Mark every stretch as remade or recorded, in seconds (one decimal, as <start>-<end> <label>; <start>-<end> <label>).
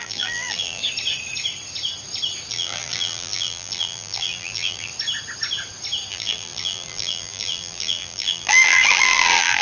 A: 0.0-0.8 remade; 0.8-2.5 recorded; 2.5-4.9 remade; 4.9-6.1 recorded; 6.1-9.6 remade